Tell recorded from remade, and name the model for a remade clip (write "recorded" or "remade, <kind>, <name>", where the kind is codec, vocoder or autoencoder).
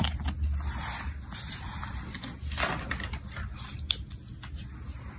recorded